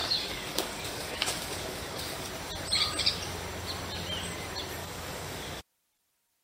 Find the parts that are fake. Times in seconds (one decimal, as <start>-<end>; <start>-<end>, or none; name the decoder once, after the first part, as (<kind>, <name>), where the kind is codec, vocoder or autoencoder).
0.0-2.3 (codec, DAC); 4.8-5.6